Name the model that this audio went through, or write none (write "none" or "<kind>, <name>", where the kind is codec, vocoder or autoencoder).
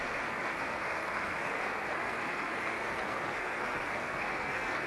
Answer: codec, SNAC